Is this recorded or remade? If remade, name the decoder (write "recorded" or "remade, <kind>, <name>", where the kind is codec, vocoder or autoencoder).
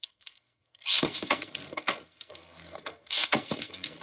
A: remade, codec, SNAC